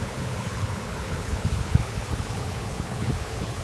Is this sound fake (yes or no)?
yes